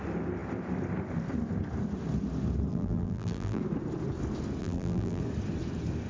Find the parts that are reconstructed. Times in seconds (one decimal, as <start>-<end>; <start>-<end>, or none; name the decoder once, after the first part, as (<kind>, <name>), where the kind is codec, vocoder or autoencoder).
2.7-3.6 (vocoder, BigVGAN v2); 4.6-5.2